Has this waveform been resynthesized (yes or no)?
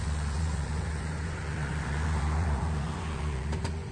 yes